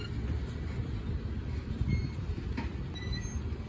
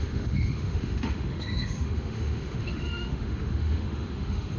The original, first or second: first